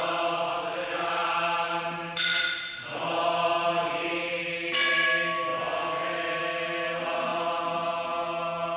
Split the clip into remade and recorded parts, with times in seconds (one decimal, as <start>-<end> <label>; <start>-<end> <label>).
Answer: 0.0-8.8 recorded